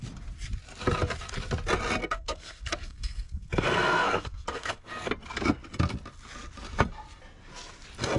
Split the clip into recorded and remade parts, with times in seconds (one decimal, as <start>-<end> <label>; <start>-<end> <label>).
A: 0.0-2.0 recorded; 2.0-5.1 remade; 5.1-8.2 recorded